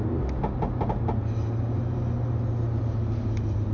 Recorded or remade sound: recorded